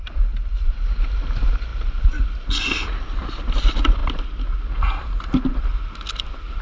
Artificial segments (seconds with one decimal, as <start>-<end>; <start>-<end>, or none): none